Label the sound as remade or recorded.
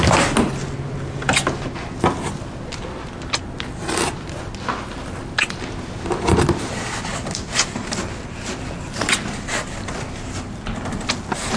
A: recorded